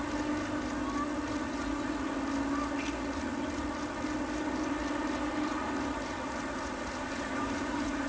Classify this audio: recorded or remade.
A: recorded